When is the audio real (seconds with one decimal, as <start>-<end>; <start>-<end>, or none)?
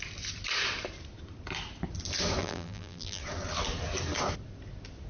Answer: 0.0-2.4; 3.2-5.1